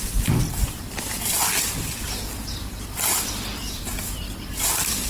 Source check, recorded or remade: remade